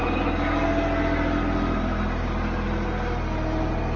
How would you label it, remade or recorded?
recorded